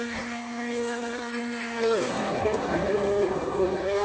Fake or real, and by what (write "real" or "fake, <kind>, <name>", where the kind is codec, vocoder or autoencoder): fake, codec, SNAC